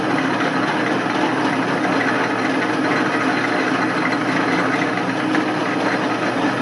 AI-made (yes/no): no